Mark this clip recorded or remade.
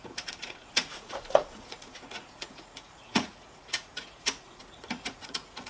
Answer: remade